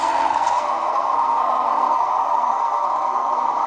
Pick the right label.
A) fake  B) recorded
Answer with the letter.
A